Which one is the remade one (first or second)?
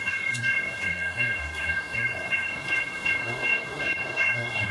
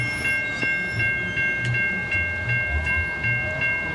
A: first